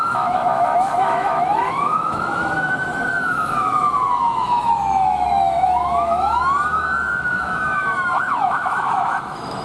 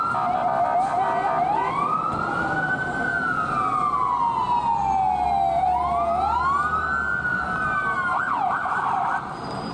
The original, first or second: second